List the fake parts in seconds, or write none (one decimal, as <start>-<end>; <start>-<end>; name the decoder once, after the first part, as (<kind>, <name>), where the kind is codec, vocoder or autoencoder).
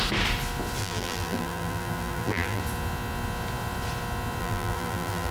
0.8-2.6 (vocoder, BigVGAN v2); 4.4-5.3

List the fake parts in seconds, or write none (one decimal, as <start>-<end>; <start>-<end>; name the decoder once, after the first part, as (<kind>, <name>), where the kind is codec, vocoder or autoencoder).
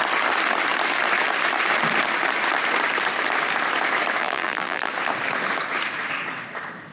4.2-4.9 (vocoder, BigVGAN v2)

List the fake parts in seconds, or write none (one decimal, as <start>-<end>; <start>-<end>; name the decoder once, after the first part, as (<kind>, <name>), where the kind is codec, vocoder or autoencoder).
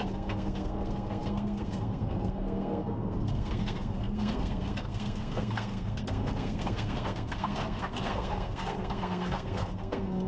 0.0-10.3 (codec, SNAC)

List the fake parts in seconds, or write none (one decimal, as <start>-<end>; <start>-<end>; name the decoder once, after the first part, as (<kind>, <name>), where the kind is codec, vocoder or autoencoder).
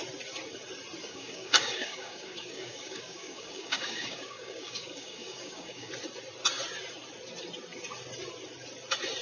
1.0-5.9 (codec, DAC)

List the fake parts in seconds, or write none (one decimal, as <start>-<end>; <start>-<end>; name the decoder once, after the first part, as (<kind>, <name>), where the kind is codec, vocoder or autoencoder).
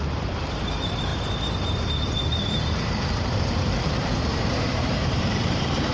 0.0-5.9 (vocoder, BigVGAN v2)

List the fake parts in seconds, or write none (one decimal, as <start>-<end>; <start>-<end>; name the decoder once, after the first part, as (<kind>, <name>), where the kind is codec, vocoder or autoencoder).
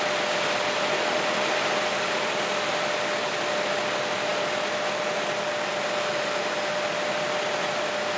none